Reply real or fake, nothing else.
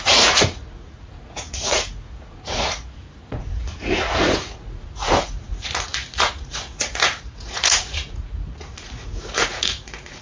fake